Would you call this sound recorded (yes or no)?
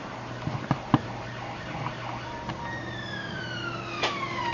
yes